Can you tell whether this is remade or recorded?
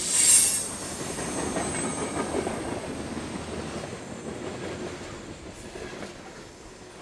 recorded